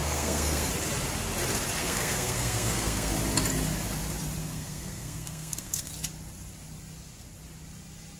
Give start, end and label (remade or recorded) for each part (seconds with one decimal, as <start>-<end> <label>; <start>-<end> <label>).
0.0-0.7 remade; 0.7-1.8 recorded; 1.8-3.1 remade; 3.1-4.4 recorded; 4.4-5.9 remade; 5.9-8.2 recorded